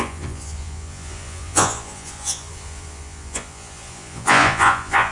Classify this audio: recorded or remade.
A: remade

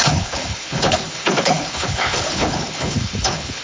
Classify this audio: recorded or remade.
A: remade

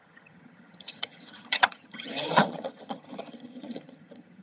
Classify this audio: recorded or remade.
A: remade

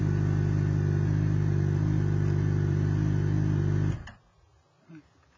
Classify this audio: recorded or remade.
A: recorded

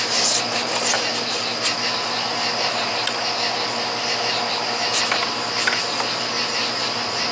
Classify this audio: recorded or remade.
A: recorded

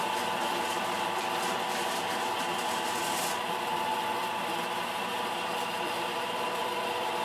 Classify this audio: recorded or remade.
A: remade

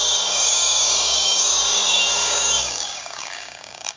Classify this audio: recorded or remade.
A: remade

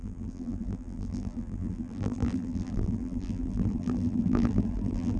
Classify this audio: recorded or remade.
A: remade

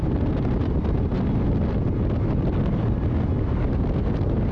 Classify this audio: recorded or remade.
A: recorded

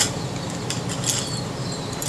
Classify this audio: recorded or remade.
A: remade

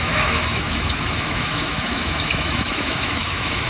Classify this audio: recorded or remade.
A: remade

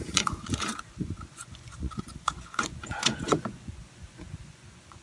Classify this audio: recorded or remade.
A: remade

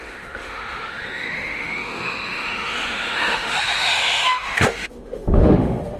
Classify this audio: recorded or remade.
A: remade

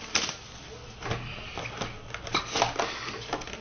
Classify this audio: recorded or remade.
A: recorded